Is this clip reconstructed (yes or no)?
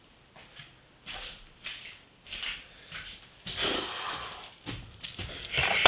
no